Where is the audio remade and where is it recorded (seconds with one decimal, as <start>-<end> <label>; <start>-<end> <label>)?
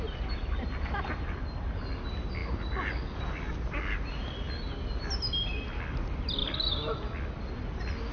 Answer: 0.0-8.1 recorded